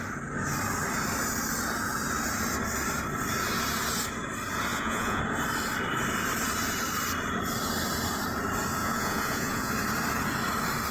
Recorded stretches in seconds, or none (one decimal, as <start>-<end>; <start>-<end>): 0.0-4.7; 5.2-8.8; 9.7-10.9